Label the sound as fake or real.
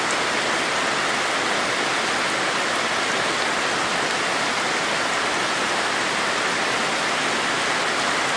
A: real